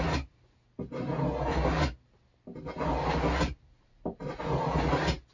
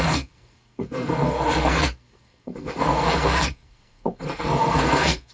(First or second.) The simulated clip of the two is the second